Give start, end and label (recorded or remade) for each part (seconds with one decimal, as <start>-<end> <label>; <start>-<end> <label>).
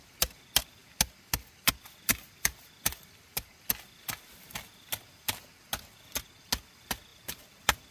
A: 0.0-7.9 recorded